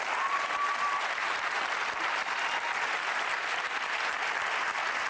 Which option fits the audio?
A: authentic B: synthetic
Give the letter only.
A